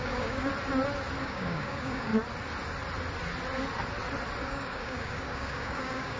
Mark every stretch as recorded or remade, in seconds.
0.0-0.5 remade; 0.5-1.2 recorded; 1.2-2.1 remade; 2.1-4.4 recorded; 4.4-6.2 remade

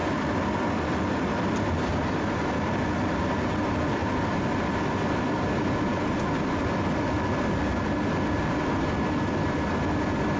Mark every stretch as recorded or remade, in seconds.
0.0-10.4 recorded

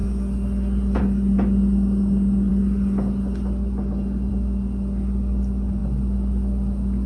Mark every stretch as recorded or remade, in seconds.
0.0-7.1 recorded

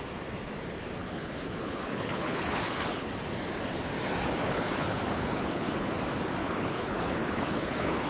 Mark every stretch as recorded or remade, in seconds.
0.0-1.0 recorded; 1.0-3.1 remade; 3.1-4.4 recorded; 4.4-5.9 remade; 5.9-6.4 recorded; 6.4-8.1 remade